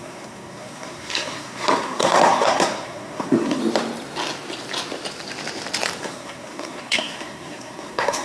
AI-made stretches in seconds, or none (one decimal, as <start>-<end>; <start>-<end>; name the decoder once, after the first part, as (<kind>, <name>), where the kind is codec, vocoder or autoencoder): 0.0-3.6 (codec, SNAC); 6.0-8.2